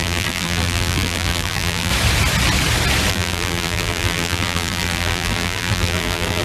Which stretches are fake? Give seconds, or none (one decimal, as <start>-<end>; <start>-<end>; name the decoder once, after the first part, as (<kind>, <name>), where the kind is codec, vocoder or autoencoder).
0.0-1.9 (vocoder, BigVGAN v2); 3.1-6.4